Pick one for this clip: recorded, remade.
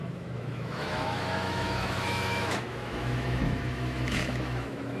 remade